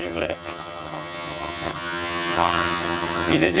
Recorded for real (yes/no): no